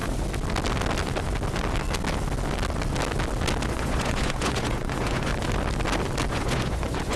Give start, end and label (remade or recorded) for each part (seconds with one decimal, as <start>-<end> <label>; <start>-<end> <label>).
0.0-3.7 recorded; 3.7-5.3 remade; 5.3-6.3 recorded; 6.3-7.2 remade